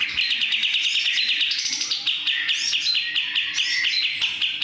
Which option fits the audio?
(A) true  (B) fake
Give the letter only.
A